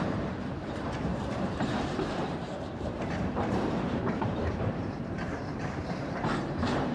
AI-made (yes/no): yes